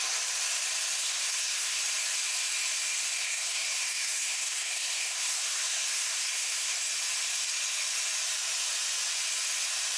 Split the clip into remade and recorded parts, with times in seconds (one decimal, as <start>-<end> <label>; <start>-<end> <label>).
0.0-1.0 recorded; 1.0-1.8 remade; 1.8-3.2 recorded; 3.2-6.8 remade; 6.8-10.0 recorded